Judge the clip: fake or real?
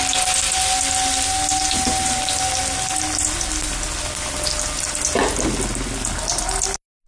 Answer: real